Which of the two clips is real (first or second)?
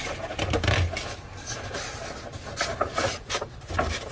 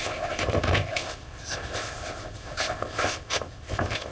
first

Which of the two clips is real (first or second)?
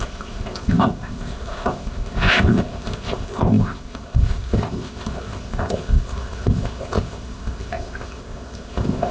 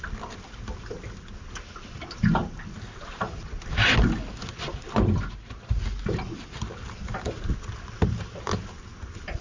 second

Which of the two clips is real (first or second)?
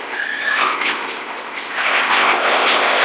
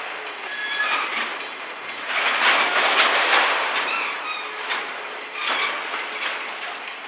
second